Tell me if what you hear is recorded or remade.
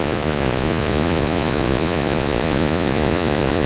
remade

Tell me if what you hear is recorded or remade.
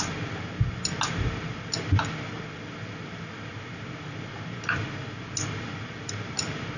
recorded